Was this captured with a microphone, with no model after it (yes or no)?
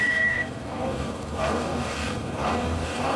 no